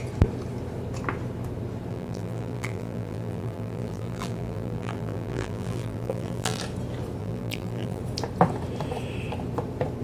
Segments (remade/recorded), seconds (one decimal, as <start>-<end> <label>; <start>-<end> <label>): 0.0-1.9 recorded; 1.9-6.6 remade; 6.6-7.2 recorded; 7.2-8.0 remade; 8.0-10.0 recorded